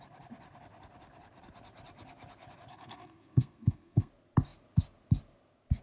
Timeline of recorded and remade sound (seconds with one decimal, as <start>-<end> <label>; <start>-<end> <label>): 0.0-2.7 recorded; 2.7-4.1 remade; 4.1-5.8 recorded